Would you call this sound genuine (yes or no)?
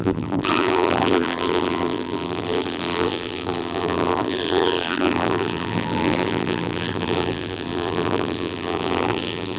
no